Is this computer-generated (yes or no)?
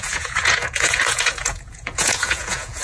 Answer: yes